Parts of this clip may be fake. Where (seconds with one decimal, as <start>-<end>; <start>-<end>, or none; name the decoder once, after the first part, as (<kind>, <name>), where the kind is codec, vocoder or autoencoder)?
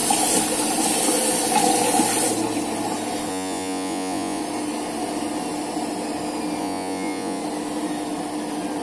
3.3-4.4 (vocoder, Vocos); 6.6-7.4